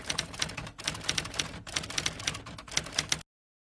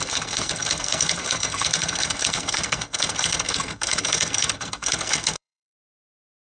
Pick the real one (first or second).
first